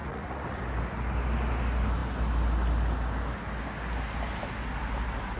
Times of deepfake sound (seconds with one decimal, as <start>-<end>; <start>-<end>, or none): 0.0-0.6